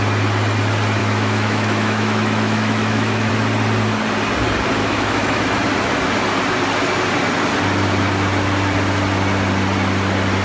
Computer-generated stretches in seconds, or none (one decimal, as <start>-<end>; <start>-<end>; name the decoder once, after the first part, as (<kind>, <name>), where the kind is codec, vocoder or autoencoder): 1.0-3.3 (autoencoder, DAC-VAE); 4.8-5.4